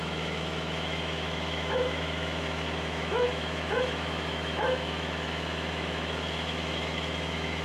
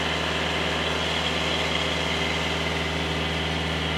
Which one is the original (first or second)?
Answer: second